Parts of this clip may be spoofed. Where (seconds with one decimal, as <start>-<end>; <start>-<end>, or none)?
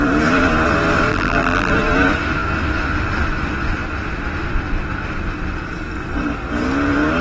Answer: 1.1-1.7